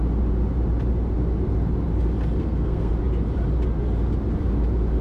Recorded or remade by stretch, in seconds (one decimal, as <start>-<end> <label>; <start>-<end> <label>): 0.0-2.4 recorded; 2.4-2.9 remade; 2.9-5.0 recorded

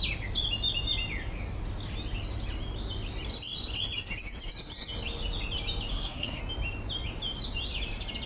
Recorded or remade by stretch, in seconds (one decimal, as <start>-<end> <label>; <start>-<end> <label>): 0.0-5.9 recorded; 5.9-6.4 remade; 6.4-8.3 recorded

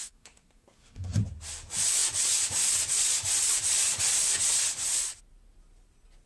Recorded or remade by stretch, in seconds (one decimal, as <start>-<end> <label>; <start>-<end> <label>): 0.0-1.2 remade; 1.2-6.3 recorded

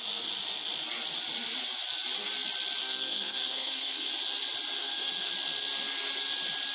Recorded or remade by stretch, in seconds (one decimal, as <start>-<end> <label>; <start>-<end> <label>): 0.0-2.8 recorded; 2.8-4.1 remade; 4.1-4.8 recorded; 4.8-5.3 remade; 5.3-6.7 recorded

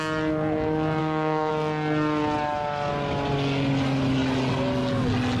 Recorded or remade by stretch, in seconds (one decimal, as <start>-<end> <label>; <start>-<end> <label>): 0.0-1.0 recorded; 1.0-1.5 remade; 1.5-5.4 recorded

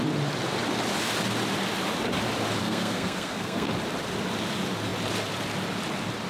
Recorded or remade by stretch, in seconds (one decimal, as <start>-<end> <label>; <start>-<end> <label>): 0.0-2.6 recorded; 2.6-3.7 remade; 3.7-6.3 recorded

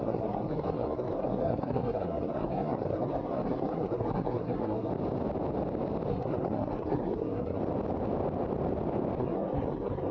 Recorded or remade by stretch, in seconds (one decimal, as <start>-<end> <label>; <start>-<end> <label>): 0.0-4.9 remade; 4.9-6.1 recorded; 6.1-7.6 remade; 7.6-9.2 recorded; 9.2-10.1 remade